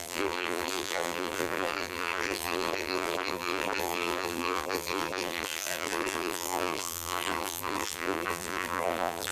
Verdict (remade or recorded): remade